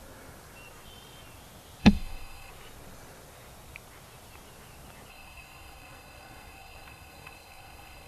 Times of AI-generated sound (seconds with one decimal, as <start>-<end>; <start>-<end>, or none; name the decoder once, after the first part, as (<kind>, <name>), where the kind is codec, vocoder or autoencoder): 1.8-2.5 (codec, SNAC); 5.1-8.1